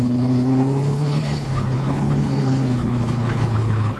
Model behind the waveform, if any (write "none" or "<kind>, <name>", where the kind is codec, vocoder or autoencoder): codec, HILCodec